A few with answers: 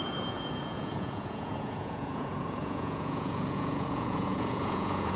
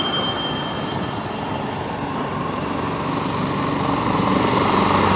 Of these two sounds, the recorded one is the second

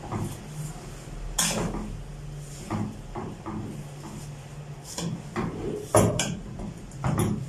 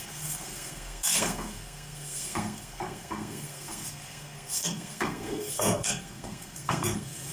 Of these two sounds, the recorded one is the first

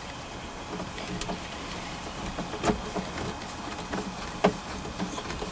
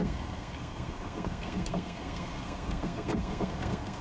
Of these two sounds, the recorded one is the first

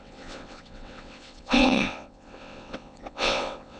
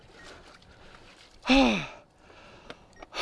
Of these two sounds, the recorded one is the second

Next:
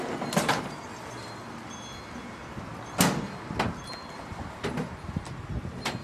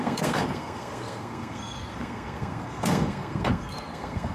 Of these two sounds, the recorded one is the first